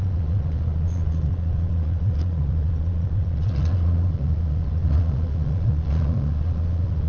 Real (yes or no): no